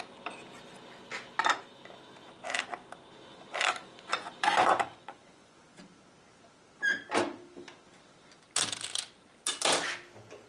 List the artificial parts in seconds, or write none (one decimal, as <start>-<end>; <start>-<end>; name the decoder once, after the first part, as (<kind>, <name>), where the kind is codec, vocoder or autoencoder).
4.1-5.8 (vocoder, Vocos)